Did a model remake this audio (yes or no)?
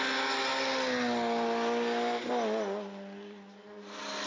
no